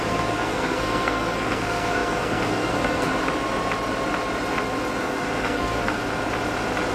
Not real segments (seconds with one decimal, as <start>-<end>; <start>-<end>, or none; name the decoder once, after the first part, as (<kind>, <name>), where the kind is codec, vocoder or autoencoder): 0.0-3.1 (codec, SNAC); 5.0-6.0